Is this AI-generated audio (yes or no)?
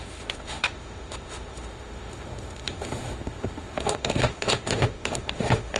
yes